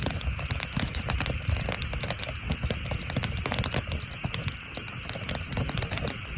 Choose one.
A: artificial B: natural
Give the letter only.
B